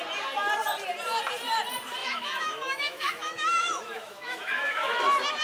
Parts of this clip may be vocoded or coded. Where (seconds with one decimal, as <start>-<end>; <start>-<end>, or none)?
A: 2.0-5.0